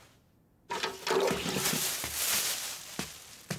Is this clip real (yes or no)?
yes